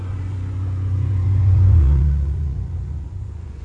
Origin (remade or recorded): remade